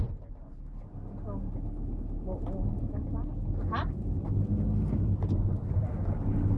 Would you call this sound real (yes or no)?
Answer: yes